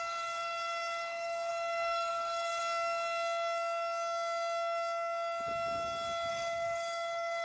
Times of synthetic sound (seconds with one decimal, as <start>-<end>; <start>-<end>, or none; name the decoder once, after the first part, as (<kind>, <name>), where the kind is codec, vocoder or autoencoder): 0.0-2.6 (codec, DAC); 6.3-7.4